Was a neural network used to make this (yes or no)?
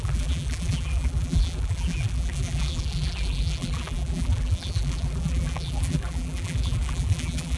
yes